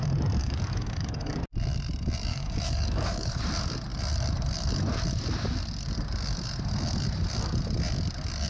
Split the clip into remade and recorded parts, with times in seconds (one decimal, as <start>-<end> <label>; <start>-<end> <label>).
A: 0.0-0.4 recorded; 0.4-1.4 remade; 1.4-2.3 recorded; 2.3-3.4 remade; 3.4-8.5 recorded